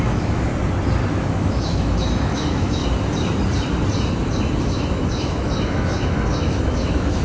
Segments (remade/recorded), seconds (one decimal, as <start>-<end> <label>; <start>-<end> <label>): 0.0-0.5 remade; 0.5-1.1 recorded; 1.1-2.8 remade; 2.8-4.6 recorded; 4.6-7.2 remade